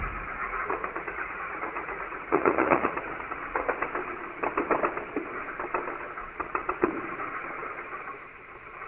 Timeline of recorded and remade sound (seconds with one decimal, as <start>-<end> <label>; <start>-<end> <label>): 0.0-0.4 recorded; 0.4-3.7 remade; 3.7-6.2 recorded; 6.2-6.9 remade; 6.9-8.9 recorded

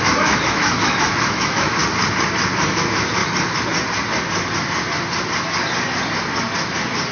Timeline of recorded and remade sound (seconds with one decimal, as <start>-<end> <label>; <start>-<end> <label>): 0.0-1.8 remade; 1.8-2.6 recorded; 2.6-3.2 remade; 3.2-7.1 recorded

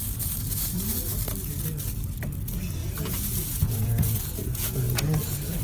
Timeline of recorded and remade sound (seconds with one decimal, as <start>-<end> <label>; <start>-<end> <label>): 0.0-2.8 recorded; 2.8-5.6 remade

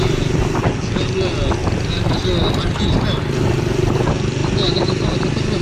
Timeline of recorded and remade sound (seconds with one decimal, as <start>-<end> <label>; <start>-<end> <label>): 0.0-1.6 recorded; 1.6-2.2 remade; 2.2-4.4 recorded; 4.4-5.6 remade